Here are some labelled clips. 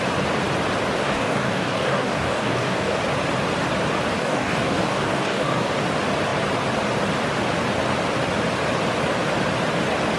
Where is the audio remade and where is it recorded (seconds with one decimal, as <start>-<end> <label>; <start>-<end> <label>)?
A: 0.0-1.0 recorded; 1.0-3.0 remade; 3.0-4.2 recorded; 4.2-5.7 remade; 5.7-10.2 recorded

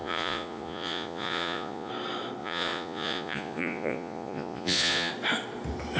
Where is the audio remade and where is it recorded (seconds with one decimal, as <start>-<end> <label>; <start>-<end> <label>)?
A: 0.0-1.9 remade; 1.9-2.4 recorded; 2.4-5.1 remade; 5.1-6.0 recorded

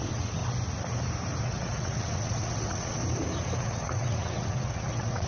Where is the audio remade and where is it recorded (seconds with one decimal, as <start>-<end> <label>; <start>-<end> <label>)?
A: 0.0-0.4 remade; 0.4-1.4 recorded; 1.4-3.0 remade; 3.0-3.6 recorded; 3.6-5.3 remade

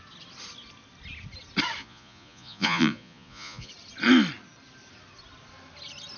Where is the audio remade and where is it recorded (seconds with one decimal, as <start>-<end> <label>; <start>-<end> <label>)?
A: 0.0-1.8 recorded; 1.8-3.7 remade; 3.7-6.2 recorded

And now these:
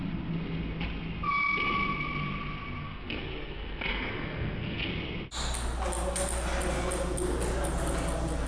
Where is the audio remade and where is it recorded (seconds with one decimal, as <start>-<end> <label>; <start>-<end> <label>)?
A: 0.0-2.8 recorded; 2.8-4.9 remade; 4.9-8.5 recorded

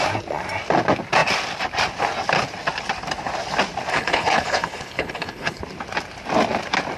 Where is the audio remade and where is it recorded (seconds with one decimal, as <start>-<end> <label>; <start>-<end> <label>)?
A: 0.0-3.9 recorded; 3.9-5.6 remade; 5.6-7.0 recorded

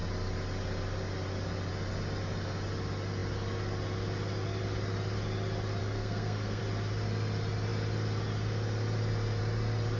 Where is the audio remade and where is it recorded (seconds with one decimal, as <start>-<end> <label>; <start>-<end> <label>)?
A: 0.0-5.8 recorded; 5.8-6.6 remade; 6.6-10.0 recorded